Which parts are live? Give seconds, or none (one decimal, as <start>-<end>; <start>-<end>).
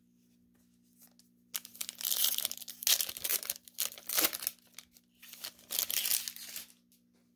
0.0-7.4